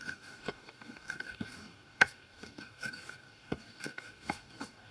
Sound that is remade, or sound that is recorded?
remade